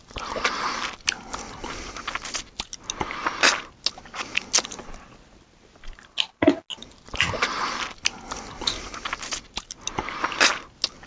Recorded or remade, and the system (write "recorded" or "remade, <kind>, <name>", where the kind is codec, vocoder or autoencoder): recorded